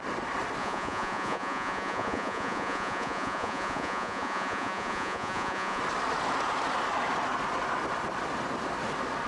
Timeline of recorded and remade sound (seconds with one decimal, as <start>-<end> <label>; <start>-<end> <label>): 0.0-0.6 recorded; 0.6-5.8 remade; 5.8-9.3 recorded